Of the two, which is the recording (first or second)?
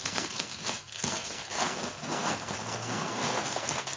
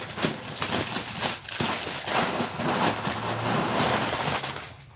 second